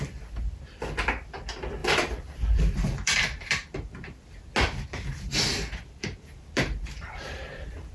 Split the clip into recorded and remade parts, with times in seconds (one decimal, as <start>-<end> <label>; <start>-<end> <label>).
0.0-1.8 recorded; 1.8-4.5 remade; 4.5-5.3 recorded; 5.3-7.9 remade